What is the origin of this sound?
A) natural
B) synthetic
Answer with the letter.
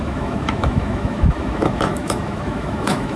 B